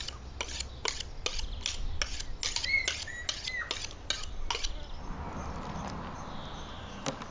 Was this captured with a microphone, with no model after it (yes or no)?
yes